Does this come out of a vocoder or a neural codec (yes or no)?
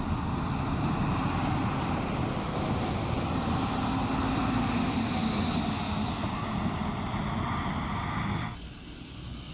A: no